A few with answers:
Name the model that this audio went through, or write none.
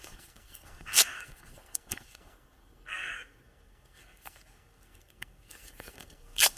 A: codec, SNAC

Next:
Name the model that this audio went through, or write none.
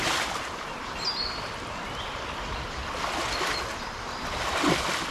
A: none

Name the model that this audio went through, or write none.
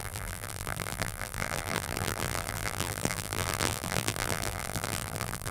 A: vocoder, BigVGAN v2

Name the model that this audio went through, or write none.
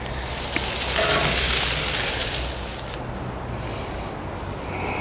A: none